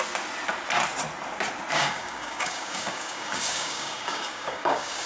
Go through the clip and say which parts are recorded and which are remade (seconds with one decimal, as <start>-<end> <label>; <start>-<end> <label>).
0.0-1.7 recorded; 1.7-5.1 remade